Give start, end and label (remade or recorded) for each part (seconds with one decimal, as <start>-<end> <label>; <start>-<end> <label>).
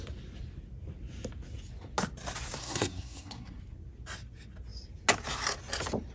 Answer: 0.0-2.6 recorded; 2.6-3.6 remade; 3.6-6.1 recorded